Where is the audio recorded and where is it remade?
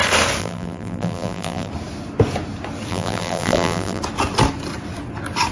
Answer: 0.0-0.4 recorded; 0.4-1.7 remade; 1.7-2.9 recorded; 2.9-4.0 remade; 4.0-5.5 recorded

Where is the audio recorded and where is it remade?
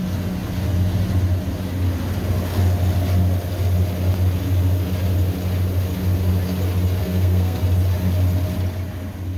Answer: 0.0-7.0 recorded; 7.0-7.6 remade; 7.6-9.4 recorded